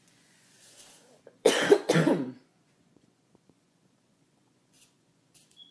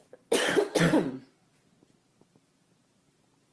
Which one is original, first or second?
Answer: second